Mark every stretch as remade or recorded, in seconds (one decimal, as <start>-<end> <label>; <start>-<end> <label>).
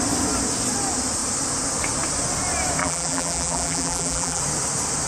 0.0-2.8 recorded; 2.8-4.4 remade; 4.4-5.1 recorded